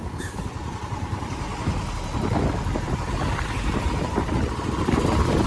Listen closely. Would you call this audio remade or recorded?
recorded